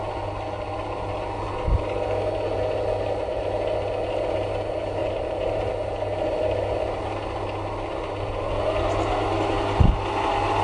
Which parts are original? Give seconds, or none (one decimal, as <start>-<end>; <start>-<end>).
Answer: 0.0-5.0; 5.7-10.6